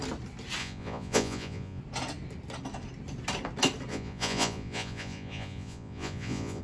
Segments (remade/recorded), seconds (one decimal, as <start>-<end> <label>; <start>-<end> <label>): 0.0-0.6 recorded; 0.6-1.8 remade; 1.8-3.9 recorded; 3.9-6.6 remade